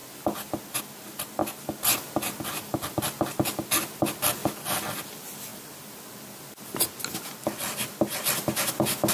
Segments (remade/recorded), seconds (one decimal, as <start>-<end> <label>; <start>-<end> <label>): 0.0-9.1 recorded